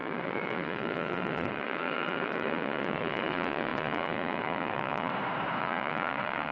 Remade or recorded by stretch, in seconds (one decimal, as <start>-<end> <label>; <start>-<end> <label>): 0.0-5.1 remade; 5.1-5.6 recorded; 5.6-6.5 remade